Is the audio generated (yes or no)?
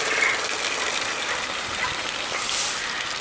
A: no